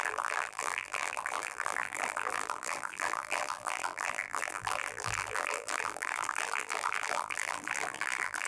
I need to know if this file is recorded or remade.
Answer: remade